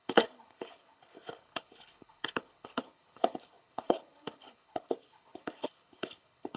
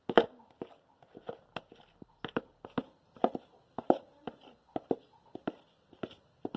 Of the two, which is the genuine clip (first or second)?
second